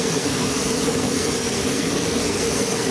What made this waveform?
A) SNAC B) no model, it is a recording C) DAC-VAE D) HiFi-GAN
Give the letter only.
A